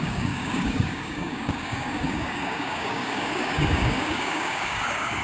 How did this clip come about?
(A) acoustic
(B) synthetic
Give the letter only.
B